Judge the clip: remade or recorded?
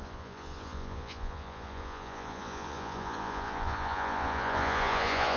remade